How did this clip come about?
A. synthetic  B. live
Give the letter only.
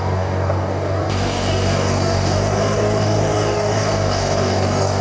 A